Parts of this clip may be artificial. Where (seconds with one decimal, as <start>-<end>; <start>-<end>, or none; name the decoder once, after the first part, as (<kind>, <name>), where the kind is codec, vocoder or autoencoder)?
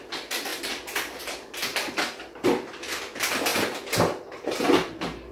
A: 0.5-1.2 (vocoder, BigVGAN v2); 1.7-3.0